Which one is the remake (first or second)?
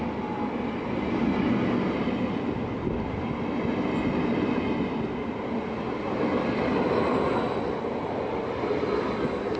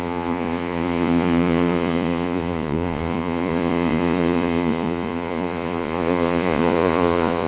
second